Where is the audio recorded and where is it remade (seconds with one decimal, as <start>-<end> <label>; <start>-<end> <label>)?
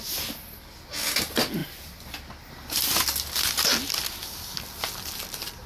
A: 0.0-5.7 recorded